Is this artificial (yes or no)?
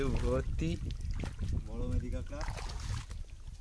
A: no